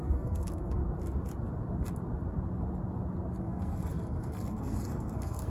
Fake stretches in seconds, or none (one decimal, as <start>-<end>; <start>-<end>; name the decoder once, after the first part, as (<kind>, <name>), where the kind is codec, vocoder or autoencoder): 0.0-0.8 (codec, SNAC); 3.4-5.5